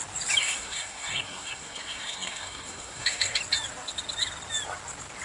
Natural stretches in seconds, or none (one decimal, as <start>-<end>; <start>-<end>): 0.0-0.4; 3.4-5.2